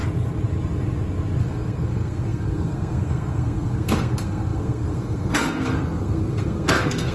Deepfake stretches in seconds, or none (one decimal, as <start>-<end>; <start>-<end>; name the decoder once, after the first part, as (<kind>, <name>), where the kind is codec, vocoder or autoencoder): 1.4-7.1 (codec, SNAC)